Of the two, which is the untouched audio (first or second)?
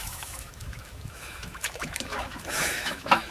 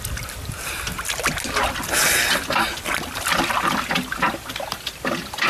second